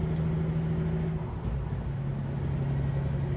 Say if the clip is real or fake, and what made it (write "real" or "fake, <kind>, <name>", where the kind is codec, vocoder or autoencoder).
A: real